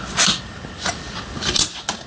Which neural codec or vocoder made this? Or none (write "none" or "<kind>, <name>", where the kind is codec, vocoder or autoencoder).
none